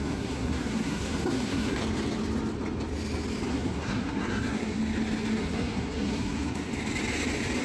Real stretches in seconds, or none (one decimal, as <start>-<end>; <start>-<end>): 1.8-3.5; 4.8-5.3; 6.7-7.6